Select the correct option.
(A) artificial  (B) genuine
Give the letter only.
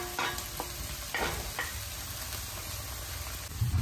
B